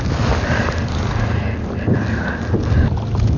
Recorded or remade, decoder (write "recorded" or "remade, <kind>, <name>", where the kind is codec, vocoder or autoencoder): recorded